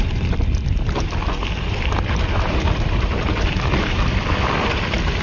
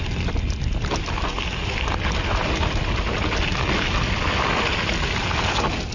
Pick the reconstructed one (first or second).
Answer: first